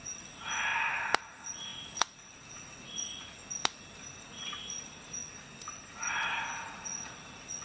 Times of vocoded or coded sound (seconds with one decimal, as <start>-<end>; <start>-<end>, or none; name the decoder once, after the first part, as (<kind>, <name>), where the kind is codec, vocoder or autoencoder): 0.0-0.7 (vocoder, Vocos); 1.2-3.4; 4.2-5.2; 5.9-7.6